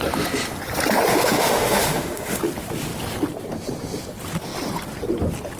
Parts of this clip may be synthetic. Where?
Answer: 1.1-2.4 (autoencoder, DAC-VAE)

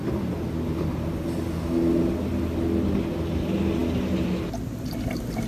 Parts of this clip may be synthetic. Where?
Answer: none

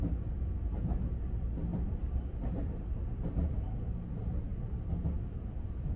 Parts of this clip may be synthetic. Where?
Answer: 0.0-4.5 (vocoder, BigVGAN v2); 5.2-6.0

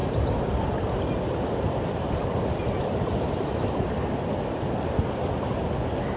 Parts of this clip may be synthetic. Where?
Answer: 0.0-3.7 (vocoder, BigVGAN v2)